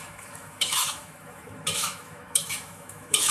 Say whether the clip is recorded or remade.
remade